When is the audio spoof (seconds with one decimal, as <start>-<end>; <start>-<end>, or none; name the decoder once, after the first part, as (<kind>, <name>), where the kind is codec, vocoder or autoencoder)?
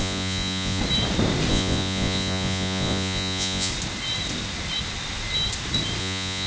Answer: 0.0-0.8 (vocoder, Vocos); 1.5-3.7; 6.0-6.5